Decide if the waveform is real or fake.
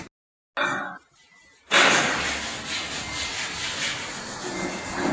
real